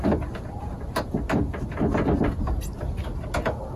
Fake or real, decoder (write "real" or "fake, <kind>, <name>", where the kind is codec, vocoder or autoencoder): real